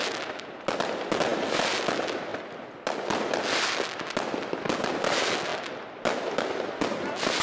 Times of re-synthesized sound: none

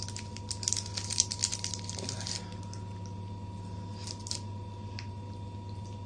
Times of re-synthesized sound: none